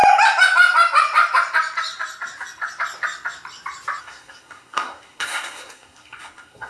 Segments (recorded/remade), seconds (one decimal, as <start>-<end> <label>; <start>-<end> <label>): 0.0-4.0 recorded; 4.0-6.7 remade